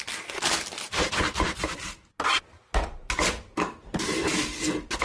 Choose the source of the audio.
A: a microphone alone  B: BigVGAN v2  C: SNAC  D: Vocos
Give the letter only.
A